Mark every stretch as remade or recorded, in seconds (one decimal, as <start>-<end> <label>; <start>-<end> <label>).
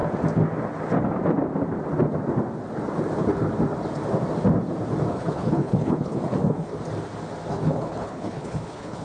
0.0-5.1 recorded; 5.1-6.7 remade; 6.7-7.5 recorded; 7.5-9.0 remade